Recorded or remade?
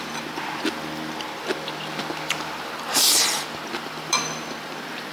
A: remade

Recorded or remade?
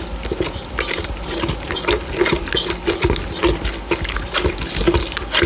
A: recorded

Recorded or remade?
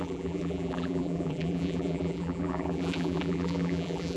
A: remade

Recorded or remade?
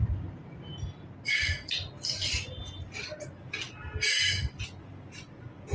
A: recorded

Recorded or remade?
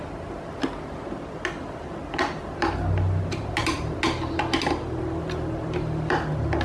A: recorded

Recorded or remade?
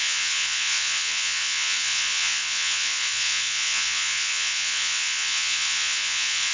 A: remade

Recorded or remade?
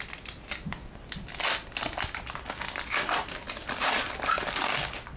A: recorded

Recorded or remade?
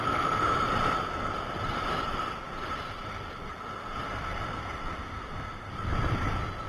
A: recorded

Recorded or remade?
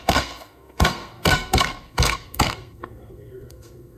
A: remade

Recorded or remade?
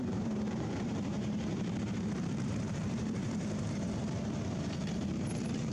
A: remade